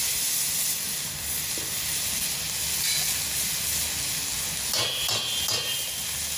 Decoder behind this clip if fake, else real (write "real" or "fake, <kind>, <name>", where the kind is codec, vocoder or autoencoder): real